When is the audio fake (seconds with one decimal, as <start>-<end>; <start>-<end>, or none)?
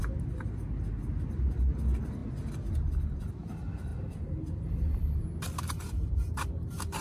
none